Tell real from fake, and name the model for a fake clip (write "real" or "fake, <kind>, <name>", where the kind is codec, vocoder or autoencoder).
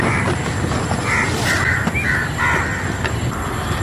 real